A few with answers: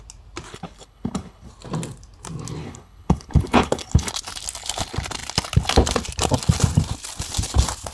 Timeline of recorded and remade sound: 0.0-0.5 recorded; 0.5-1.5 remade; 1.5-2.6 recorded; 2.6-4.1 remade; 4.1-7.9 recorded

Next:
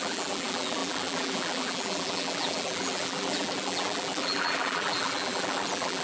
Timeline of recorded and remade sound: 0.0-6.0 remade

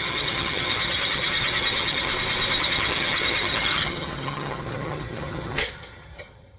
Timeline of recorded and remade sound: 0.0-2.1 remade; 2.1-2.6 recorded; 2.6-6.6 remade

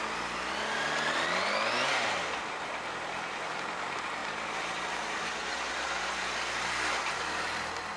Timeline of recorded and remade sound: 0.0-8.0 recorded

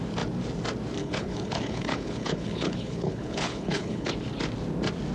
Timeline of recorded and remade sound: 0.0-1.0 recorded; 1.0-4.1 remade; 4.1-5.1 recorded